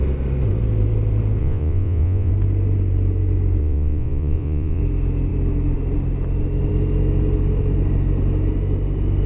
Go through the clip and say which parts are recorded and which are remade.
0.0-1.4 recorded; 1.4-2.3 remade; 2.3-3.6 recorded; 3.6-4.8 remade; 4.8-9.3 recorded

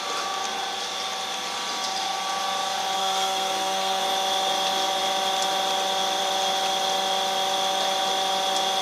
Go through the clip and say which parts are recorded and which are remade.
0.0-3.0 recorded; 3.0-4.0 remade; 4.0-8.8 recorded

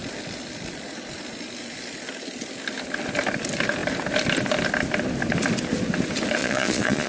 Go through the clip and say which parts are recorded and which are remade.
0.0-6.4 recorded; 6.4-7.1 remade

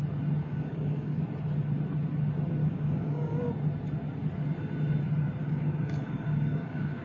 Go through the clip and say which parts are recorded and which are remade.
0.0-0.4 recorded; 0.4-1.2 remade; 1.2-2.6 recorded; 2.6-3.5 remade; 3.5-5.4 recorded; 5.4-7.0 remade